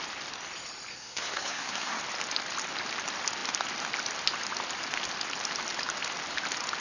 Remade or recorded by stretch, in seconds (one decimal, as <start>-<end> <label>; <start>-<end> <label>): 0.0-0.9 recorded; 0.9-2.0 remade; 2.0-6.8 recorded